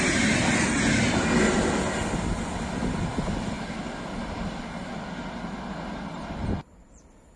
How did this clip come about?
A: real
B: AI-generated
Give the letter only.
A